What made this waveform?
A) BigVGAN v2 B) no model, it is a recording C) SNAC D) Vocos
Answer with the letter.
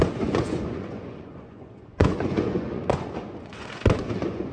D